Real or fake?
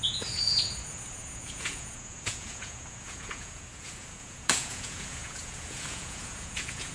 fake